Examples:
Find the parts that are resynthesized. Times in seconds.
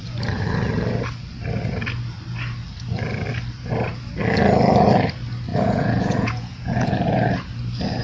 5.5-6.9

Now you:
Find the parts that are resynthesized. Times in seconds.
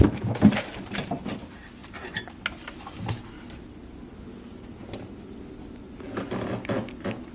none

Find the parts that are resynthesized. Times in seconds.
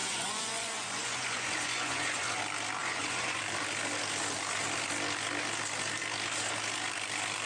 0.0-2.4; 2.8-3.4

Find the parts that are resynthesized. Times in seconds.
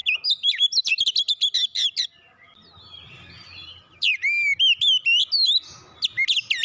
none